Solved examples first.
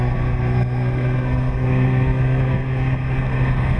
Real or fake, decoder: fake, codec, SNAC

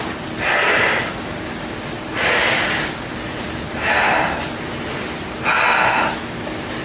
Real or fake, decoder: real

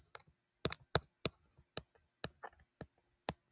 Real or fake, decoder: real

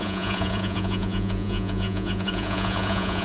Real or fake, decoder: fake, vocoder, Vocos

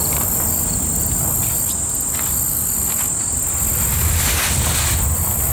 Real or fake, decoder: real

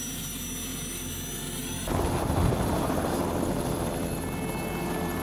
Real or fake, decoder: real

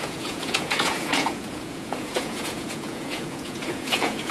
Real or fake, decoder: fake, vocoder, Vocos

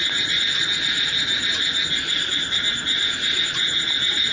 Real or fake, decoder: real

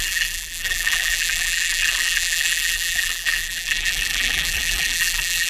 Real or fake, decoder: fake, vocoder, BigVGAN v2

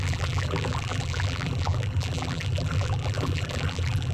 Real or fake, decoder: fake, vocoder, BigVGAN v2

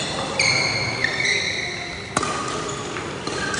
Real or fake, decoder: real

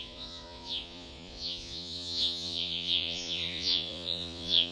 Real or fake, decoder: fake, vocoder, Vocos